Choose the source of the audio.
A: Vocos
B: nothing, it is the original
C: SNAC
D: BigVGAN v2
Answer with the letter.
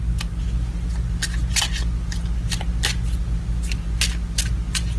B